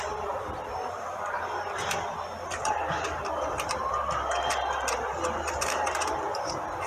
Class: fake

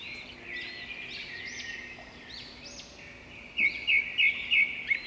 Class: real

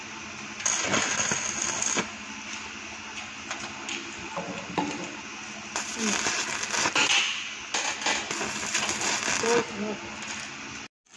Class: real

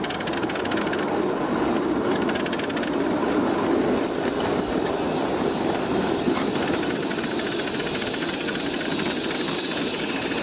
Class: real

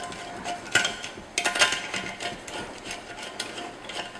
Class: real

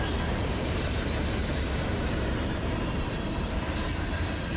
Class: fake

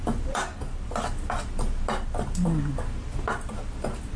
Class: real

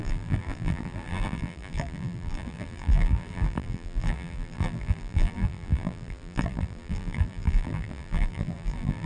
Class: fake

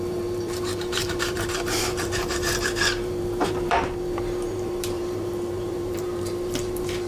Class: fake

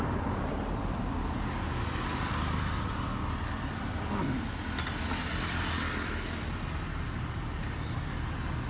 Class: real